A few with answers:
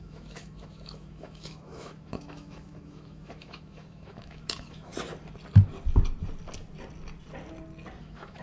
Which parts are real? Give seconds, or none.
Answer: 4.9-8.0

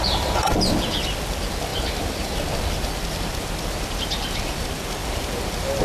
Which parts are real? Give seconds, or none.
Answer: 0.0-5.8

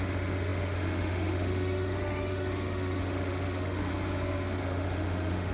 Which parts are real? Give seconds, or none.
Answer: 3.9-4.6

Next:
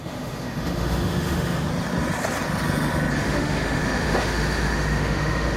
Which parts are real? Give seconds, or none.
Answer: 1.7-3.2

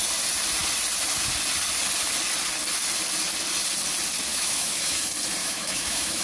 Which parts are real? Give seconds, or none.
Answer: 0.0-4.3; 5.0-5.4

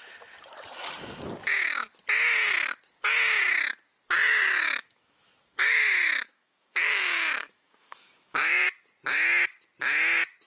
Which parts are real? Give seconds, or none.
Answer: 0.0-4.3; 8.7-10.5

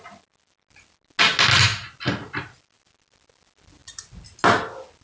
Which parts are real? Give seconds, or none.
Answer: 0.0-5.0